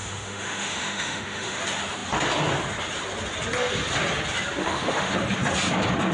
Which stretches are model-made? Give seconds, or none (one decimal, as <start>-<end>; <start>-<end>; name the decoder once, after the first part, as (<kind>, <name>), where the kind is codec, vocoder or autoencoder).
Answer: 0.0-1.6 (autoencoder, DAC-VAE); 4.6-5.1